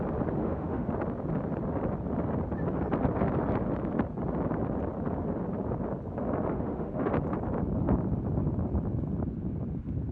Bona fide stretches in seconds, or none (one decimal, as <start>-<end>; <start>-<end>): 0.0-0.4; 0.9-6.5; 7.1-10.1

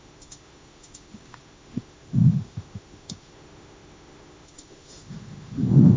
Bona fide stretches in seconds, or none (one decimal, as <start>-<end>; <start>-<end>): none

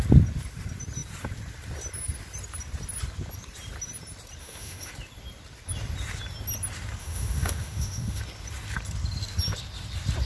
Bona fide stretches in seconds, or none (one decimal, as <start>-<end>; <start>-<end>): 0.0-4.4; 4.9-7.0; 8.2-10.2

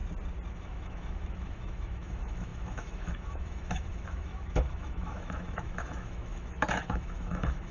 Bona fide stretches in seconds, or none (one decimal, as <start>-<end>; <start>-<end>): 0.0-0.5

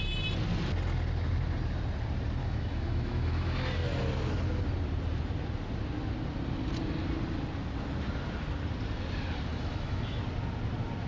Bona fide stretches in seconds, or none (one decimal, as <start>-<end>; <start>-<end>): 0.0-2.4; 3.5-9.5; 10.2-11.1